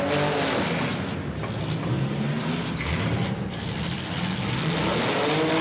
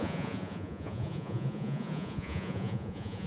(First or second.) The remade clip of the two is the second